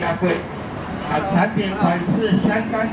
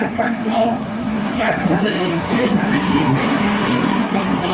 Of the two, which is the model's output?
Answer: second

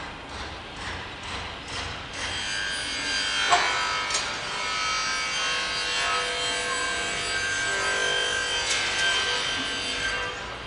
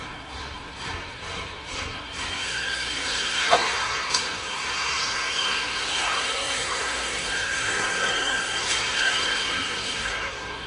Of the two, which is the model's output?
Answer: second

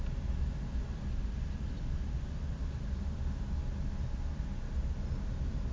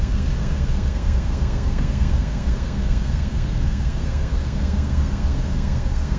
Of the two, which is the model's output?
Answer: second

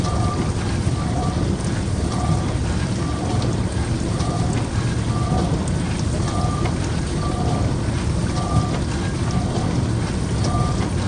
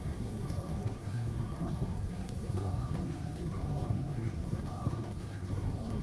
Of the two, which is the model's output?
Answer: second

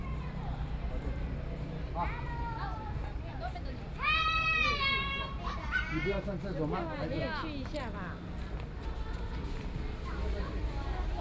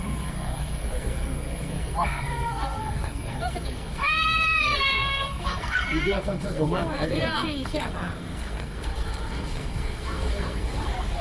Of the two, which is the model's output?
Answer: second